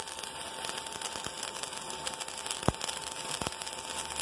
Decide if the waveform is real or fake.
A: real